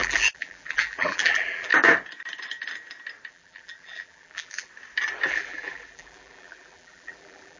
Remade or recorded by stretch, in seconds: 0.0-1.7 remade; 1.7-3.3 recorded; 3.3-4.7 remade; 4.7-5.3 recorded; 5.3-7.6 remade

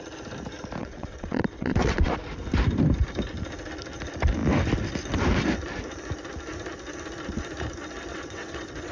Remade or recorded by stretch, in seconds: 0.0-0.8 recorded; 0.8-2.1 remade; 2.1-8.1 recorded; 8.1-8.9 remade

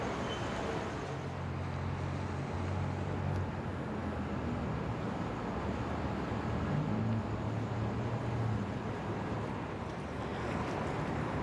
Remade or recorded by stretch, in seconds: 0.0-11.4 recorded

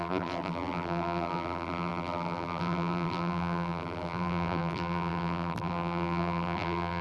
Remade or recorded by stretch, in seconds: 0.0-7.0 remade